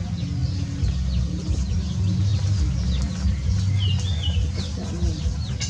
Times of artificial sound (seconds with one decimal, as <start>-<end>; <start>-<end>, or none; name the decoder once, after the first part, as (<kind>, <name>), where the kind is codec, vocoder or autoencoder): none